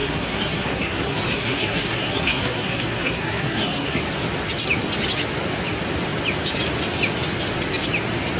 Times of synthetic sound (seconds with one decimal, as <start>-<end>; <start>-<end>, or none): 0.0-4.0